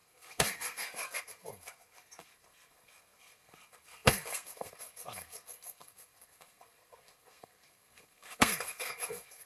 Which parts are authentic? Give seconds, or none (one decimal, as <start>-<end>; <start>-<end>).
none